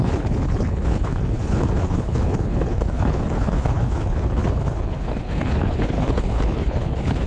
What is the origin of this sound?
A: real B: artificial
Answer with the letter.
B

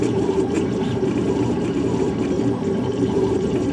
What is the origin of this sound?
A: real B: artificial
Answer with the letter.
B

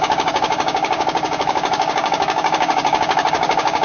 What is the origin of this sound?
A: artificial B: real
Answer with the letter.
A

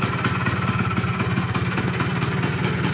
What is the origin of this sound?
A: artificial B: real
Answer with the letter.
B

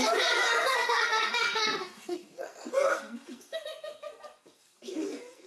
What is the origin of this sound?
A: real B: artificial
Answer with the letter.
B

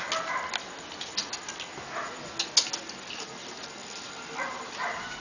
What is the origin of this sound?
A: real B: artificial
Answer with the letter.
A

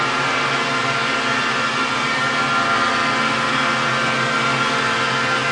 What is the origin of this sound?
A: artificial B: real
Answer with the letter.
B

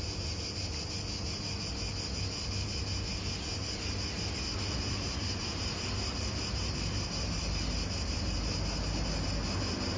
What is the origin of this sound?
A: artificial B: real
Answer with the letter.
B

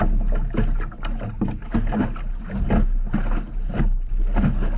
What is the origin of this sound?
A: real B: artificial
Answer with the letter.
A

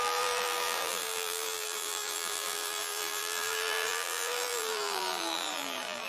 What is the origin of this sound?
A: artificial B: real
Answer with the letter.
A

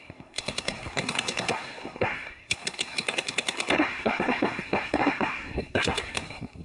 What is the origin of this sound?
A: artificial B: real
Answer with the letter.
A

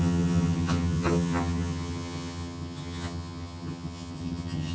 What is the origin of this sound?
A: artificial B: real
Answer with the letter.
A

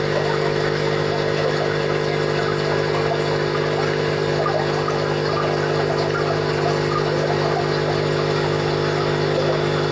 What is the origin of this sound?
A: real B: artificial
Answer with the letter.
A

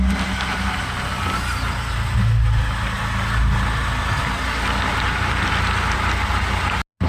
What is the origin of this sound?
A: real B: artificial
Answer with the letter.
A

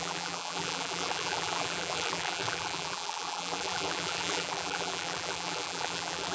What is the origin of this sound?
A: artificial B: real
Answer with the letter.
A